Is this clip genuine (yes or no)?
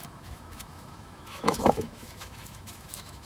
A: no